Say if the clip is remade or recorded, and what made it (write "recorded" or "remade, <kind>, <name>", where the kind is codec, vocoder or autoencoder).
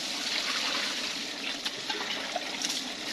recorded